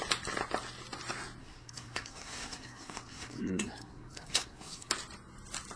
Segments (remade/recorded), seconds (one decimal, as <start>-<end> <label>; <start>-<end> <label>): 0.0-1.4 recorded; 1.4-4.9 remade; 4.9-5.8 recorded